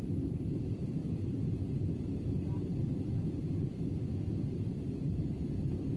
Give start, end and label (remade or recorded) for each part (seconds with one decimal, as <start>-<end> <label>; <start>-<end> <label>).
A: 0.0-3.7 recorded; 3.7-4.3 remade; 4.3-6.0 recorded